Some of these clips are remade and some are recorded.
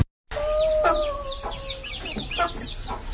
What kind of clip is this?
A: recorded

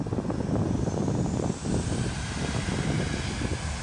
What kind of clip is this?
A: recorded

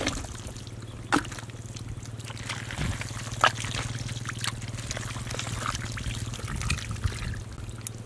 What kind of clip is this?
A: recorded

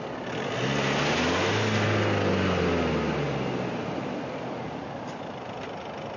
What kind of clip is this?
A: recorded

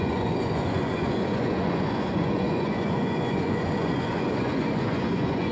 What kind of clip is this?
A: remade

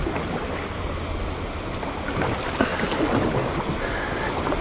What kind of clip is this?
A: recorded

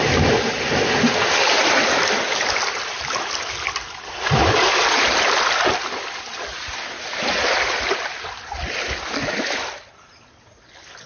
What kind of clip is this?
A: recorded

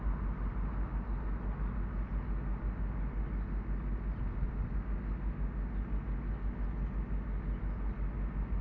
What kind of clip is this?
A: recorded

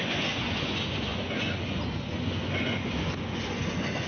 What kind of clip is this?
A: remade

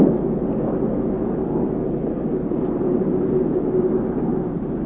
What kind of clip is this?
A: recorded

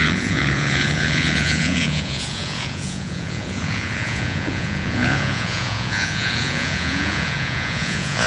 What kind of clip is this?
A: remade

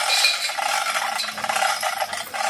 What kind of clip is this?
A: recorded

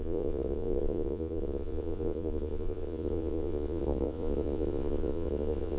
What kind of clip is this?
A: remade